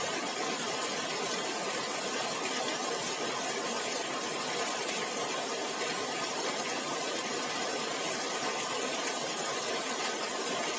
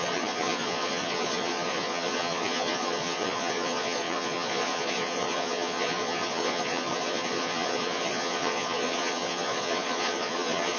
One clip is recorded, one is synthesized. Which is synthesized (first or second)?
second